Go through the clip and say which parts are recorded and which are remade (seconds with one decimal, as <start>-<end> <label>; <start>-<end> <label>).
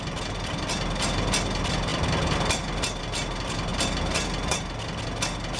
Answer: 0.0-5.6 recorded